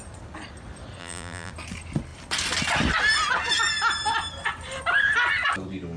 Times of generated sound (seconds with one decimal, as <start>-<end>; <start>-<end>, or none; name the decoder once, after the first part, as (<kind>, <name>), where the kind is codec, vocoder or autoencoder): 1.0-1.5 (vocoder, BigVGAN v2)